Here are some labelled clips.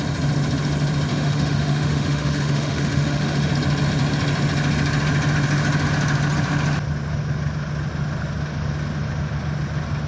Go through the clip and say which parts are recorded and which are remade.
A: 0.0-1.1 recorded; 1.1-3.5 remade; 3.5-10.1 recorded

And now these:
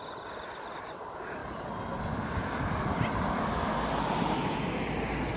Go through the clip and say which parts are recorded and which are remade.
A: 0.0-5.4 recorded

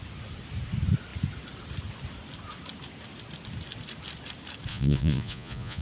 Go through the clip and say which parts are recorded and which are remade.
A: 0.0-4.7 recorded; 4.7-5.8 remade